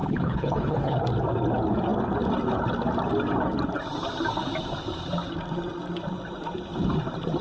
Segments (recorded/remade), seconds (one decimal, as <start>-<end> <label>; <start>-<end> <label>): 0.0-1.0 remade; 1.0-7.4 recorded